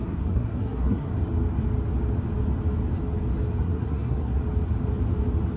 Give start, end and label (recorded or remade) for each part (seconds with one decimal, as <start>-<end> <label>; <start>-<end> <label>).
0.0-1.1 remade; 1.1-3.6 recorded; 3.6-4.4 remade; 4.4-5.6 recorded